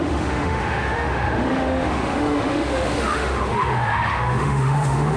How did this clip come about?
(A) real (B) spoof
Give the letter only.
B